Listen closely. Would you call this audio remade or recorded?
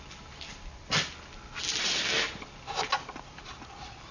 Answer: recorded